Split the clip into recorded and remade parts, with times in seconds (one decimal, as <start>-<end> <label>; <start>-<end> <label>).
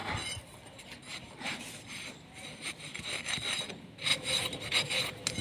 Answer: 0.0-5.4 recorded